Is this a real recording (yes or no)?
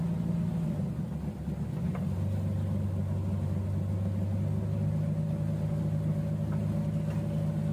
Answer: yes